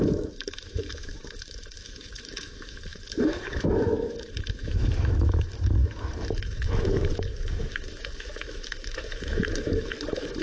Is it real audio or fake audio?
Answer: fake